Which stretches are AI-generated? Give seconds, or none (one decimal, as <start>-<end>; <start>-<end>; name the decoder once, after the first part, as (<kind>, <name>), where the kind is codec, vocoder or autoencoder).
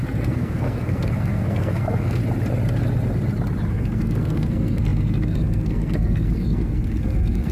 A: 0.0-2.2 (codec, SNAC); 3.7-7.5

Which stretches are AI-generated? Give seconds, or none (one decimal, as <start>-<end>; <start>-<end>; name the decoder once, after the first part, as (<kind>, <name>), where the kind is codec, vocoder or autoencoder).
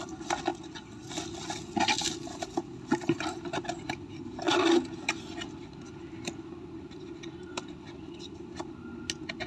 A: none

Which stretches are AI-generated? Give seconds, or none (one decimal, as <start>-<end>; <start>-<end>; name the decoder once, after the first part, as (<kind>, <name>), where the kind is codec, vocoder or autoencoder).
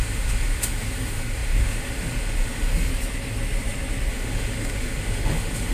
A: 0.0-2.9 (autoencoder, DAC-VAE); 4.1-5.7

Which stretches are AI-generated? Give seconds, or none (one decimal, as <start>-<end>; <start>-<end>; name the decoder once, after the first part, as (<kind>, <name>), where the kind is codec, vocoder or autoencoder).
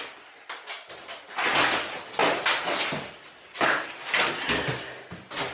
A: none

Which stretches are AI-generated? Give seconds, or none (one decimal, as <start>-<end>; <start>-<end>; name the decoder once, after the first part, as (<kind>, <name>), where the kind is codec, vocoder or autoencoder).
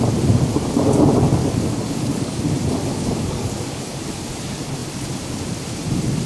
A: 1.4-2.4 (codec, DAC); 2.9-4.0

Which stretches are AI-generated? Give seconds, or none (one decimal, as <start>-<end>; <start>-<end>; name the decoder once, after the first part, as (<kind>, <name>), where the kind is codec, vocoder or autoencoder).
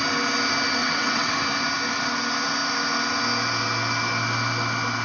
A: 0.8-1.4 (vocoder, WaveNeXt)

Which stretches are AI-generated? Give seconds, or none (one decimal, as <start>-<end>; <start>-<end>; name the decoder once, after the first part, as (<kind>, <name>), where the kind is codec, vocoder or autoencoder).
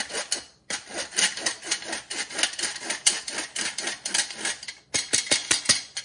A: 5.4-6.0 (vocoder, Vocos)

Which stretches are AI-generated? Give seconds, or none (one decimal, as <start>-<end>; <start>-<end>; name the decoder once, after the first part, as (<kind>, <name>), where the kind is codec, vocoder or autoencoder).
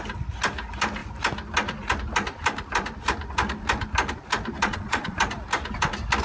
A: 4.6-5.2 (vocoder, Vocos)